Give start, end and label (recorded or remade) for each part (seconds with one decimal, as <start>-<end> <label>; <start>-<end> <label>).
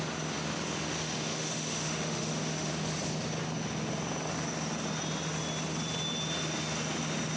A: 0.0-1.0 recorded; 1.0-2.7 remade; 2.7-7.4 recorded